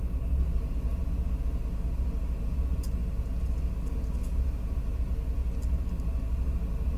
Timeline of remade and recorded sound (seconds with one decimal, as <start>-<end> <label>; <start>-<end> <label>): 0.0-7.0 recorded